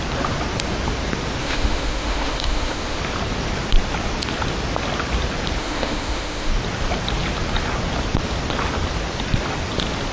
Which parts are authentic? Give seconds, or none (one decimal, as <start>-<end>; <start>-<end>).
0.0-1.4; 3.0-5.6; 6.5-10.1